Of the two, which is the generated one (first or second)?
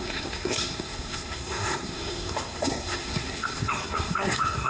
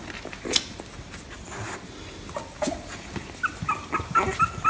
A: first